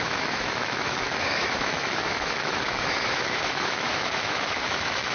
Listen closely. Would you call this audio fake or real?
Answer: fake